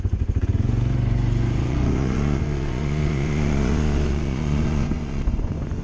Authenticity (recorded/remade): remade